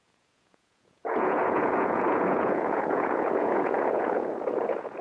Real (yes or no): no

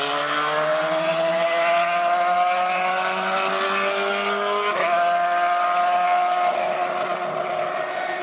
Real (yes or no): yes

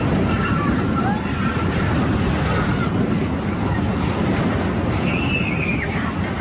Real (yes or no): yes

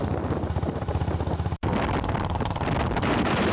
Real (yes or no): no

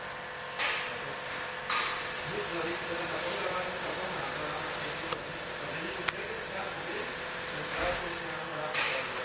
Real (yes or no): yes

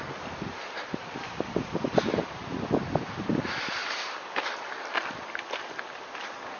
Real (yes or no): yes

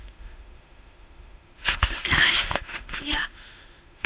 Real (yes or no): no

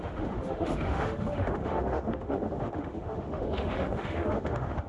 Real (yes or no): no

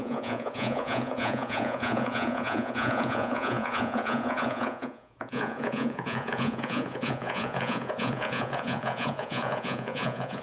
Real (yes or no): no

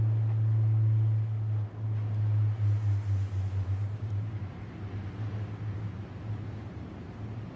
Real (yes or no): yes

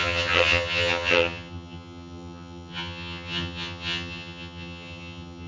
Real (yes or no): no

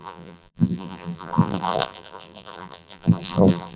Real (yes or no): no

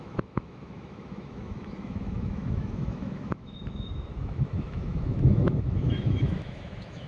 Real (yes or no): no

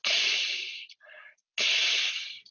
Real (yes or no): yes